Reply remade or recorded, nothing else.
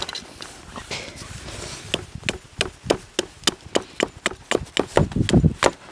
recorded